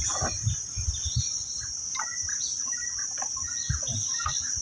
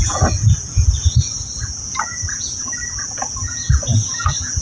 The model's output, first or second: second